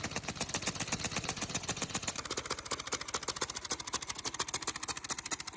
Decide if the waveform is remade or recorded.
recorded